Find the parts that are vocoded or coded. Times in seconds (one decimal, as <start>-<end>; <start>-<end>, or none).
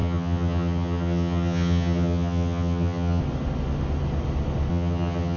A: 0.0-3.2; 4.7-5.4